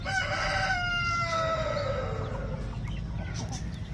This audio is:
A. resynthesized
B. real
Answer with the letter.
B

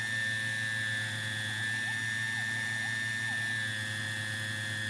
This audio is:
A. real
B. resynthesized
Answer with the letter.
A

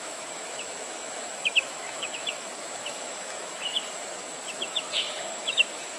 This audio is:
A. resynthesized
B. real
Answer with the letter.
A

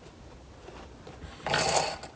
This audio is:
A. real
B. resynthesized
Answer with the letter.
A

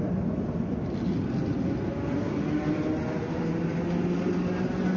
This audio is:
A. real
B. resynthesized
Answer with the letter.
A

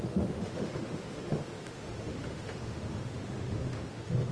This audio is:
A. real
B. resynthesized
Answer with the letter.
B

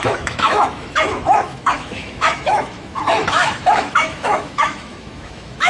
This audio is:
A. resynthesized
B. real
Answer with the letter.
A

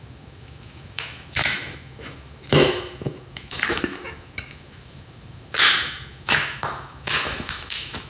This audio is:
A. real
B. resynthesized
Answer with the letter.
B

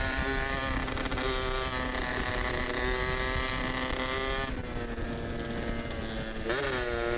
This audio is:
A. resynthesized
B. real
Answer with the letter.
B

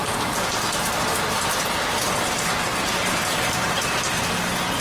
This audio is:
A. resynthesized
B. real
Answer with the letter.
B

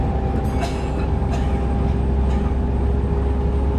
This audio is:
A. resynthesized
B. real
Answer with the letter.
B